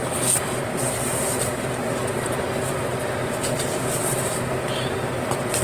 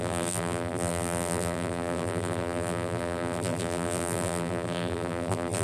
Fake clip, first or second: second